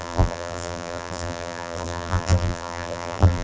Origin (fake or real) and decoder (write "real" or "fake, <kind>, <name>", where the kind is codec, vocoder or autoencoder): fake, vocoder, BigVGAN v2